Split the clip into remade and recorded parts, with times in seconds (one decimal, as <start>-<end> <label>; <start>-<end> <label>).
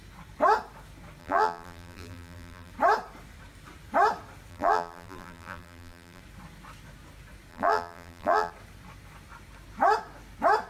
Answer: 0.0-1.2 recorded; 1.2-2.7 remade; 2.7-4.5 recorded; 4.5-6.2 remade; 6.2-7.5 recorded; 7.5-8.5 remade; 8.5-10.7 recorded